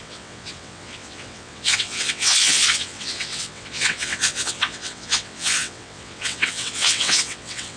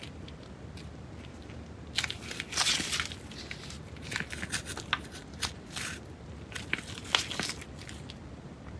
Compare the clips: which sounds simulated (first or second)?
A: first